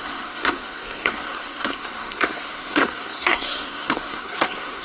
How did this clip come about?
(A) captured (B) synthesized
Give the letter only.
B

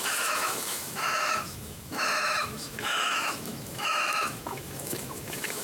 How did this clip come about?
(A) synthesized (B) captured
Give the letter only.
A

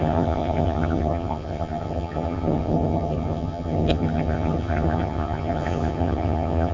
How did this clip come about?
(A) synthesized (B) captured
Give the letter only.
A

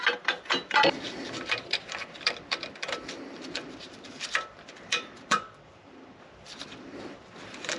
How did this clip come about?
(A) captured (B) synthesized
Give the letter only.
B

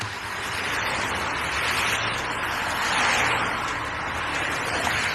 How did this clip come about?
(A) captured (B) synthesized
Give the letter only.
A